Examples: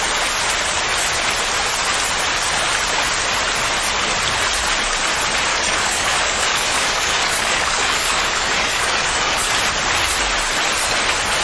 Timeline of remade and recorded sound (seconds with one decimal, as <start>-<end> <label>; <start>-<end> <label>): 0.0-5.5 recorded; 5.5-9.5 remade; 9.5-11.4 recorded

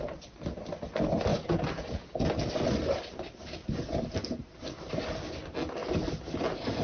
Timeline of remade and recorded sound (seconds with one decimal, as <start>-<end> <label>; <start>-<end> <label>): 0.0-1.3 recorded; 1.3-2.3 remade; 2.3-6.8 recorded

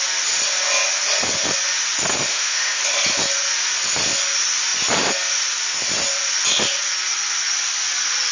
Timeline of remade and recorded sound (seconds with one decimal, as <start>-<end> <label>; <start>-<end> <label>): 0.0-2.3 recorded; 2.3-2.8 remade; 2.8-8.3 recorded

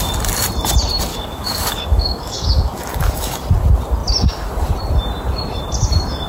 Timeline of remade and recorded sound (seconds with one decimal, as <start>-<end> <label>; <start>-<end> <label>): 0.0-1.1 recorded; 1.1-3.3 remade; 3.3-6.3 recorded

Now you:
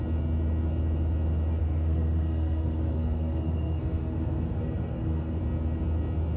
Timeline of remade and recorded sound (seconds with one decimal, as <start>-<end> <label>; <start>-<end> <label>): 0.0-1.6 recorded; 1.6-5.4 remade; 5.4-6.4 recorded